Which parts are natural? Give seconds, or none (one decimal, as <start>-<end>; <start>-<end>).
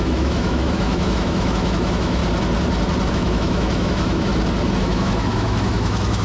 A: 2.2-3.1; 4.3-4.8